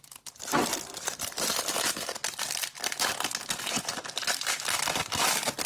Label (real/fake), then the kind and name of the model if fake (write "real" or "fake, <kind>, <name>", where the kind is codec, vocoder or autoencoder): real